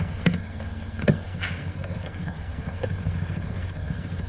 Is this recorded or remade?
remade